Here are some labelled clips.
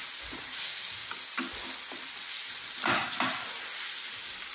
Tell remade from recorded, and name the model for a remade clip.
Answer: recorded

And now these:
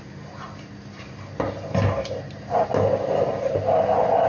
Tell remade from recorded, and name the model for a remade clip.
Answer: recorded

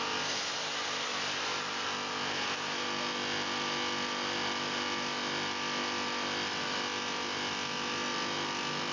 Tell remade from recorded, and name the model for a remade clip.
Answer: recorded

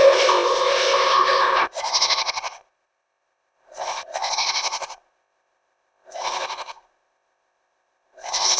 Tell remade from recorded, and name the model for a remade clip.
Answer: remade, codec, ZipCodec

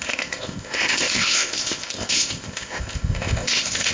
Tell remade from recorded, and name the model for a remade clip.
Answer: remade, codec, ZipCodec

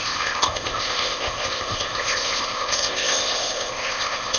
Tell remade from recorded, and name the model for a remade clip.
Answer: remade, codec, ZipCodec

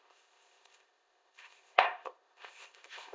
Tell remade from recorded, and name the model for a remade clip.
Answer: remade, codec, ZipCodec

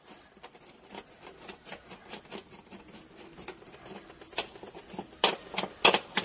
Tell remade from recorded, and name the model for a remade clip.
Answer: recorded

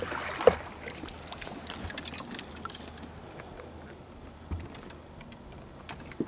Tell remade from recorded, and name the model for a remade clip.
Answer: recorded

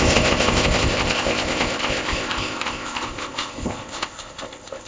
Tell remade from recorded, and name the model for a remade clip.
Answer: remade, codec, ZipCodec